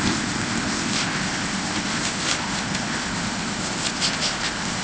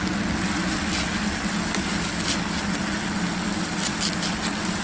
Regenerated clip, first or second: first